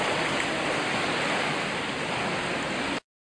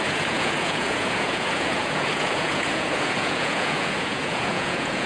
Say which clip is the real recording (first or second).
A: first